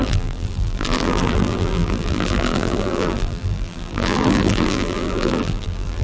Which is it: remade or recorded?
remade